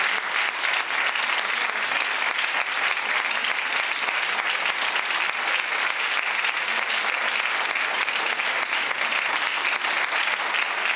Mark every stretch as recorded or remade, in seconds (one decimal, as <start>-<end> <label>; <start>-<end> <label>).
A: 0.0-11.0 recorded